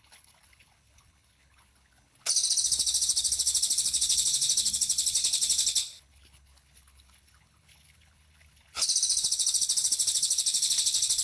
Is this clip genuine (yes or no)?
no